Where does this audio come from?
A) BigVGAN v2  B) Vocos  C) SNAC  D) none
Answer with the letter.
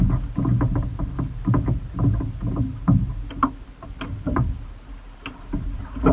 D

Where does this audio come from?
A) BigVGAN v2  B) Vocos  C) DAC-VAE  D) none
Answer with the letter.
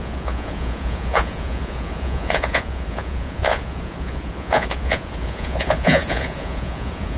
B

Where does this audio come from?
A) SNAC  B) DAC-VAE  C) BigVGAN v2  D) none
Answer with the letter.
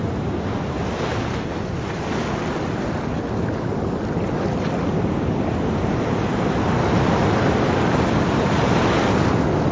D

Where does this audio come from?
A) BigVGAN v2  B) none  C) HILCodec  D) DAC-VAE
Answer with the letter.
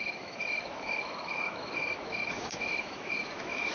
D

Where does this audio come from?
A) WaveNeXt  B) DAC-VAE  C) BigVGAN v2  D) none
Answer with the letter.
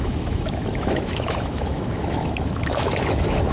B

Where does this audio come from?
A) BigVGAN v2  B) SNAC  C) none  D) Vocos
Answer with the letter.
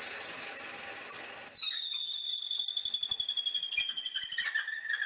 C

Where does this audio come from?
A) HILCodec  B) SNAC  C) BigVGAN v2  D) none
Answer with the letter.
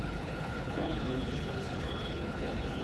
A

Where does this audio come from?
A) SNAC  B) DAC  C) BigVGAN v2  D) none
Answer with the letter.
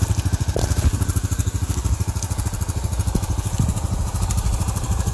C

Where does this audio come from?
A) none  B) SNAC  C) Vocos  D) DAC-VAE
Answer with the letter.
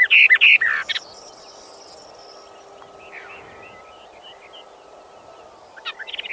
A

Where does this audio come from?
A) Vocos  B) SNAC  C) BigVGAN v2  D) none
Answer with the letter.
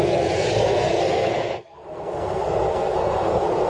B